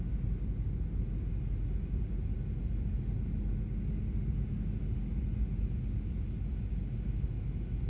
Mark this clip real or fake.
real